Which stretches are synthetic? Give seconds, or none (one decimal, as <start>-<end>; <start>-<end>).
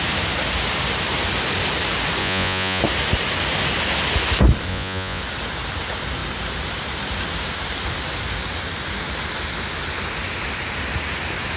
2.2-2.8; 4.7-5.2